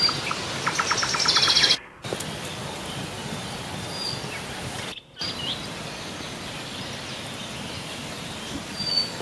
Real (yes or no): yes